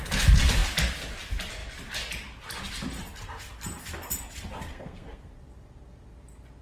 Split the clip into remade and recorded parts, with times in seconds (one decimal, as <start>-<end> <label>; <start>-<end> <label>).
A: 0.0-4.7 recorded; 4.7-5.3 remade; 5.3-6.6 recorded